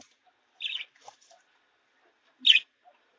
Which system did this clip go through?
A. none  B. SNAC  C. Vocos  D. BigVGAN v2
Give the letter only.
A